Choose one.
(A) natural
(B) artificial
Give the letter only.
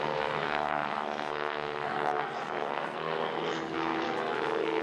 B